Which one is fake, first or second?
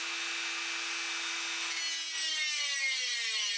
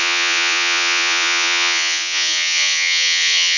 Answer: second